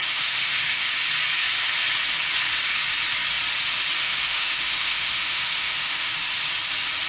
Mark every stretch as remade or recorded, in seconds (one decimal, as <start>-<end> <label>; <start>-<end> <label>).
0.0-0.9 remade; 0.9-4.0 recorded; 4.0-6.1 remade; 6.1-7.1 recorded